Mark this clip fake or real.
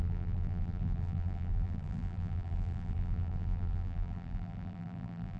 fake